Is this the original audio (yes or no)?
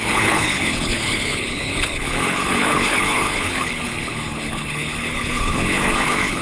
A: no